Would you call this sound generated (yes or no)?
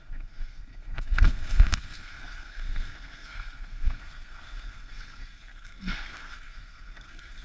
yes